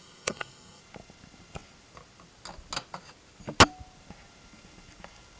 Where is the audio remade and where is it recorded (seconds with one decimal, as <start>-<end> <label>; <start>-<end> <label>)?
0.0-0.8 remade; 0.8-5.4 recorded